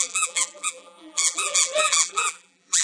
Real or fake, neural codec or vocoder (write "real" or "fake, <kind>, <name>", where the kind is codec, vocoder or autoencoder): fake, vocoder, BigVGAN v2